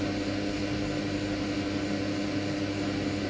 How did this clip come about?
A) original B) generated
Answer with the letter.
A